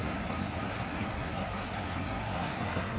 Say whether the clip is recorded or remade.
remade